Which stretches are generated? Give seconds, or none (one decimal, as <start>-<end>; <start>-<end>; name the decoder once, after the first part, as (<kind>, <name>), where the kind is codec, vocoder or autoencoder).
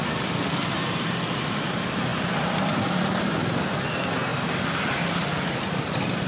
none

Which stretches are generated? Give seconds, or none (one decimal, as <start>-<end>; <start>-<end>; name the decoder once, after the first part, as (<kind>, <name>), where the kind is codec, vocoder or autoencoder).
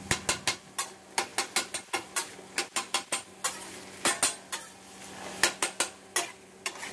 none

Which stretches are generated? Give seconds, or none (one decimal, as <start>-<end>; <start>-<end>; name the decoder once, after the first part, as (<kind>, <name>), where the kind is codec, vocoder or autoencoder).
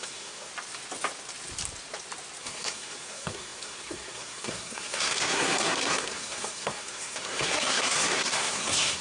0.0-0.5 (codec, SNAC); 2.4-9.0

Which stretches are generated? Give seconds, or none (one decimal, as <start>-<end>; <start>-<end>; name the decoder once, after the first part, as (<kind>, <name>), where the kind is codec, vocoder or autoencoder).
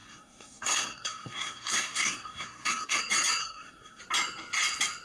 0.0-3.0 (codec, SNAC); 3.4-4.0